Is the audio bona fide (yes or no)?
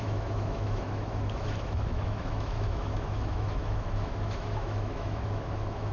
no